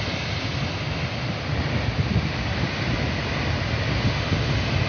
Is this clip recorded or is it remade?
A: recorded